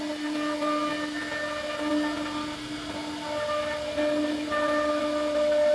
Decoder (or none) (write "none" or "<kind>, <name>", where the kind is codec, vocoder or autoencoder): none